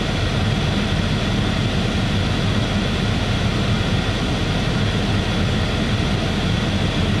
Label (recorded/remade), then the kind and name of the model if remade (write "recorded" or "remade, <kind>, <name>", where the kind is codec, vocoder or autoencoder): recorded